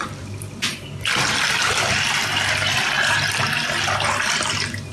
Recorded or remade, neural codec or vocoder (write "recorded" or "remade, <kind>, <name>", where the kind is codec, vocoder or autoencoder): remade, vocoder, BigVGAN v2